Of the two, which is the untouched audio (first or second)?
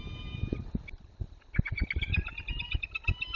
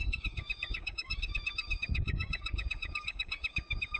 first